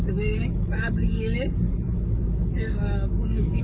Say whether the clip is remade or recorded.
remade